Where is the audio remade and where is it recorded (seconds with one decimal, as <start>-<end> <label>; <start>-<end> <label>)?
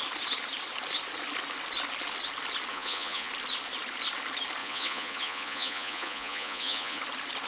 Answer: 0.0-2.7 recorded; 2.7-3.3 remade; 3.3-4.6 recorded; 4.6-7.0 remade; 7.0-7.5 recorded